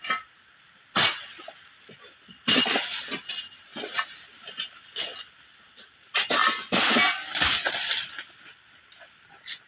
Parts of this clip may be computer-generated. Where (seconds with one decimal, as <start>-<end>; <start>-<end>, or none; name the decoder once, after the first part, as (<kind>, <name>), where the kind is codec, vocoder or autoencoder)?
0.0-3.7 (vocoder, BigVGAN v2); 5.0-6.4; 7.5-9.7